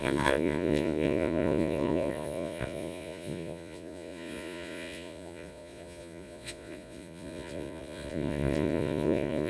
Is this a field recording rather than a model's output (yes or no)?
no